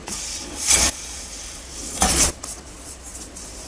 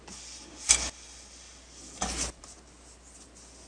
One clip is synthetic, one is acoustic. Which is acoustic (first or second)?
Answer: second